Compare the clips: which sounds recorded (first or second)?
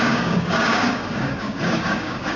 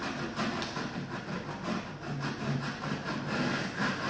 second